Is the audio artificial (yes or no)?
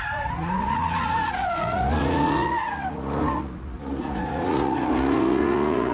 yes